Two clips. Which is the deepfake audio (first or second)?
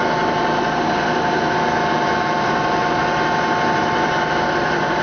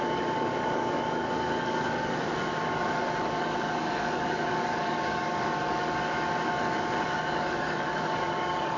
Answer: second